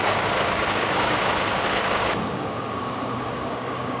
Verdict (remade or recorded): remade